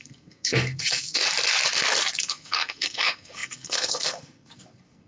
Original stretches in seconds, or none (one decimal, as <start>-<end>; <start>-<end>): 1.2-2.2